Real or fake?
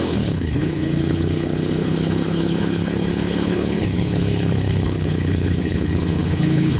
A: fake